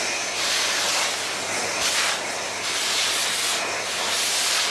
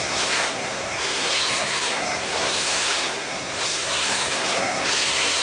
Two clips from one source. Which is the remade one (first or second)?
second